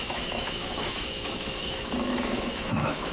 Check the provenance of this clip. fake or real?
fake